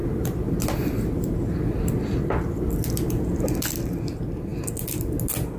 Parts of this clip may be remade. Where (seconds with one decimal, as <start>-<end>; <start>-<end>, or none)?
none